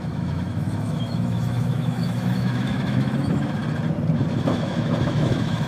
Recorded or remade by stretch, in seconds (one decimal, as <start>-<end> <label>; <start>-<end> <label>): 0.0-3.6 remade; 3.6-4.4 recorded; 4.4-5.7 remade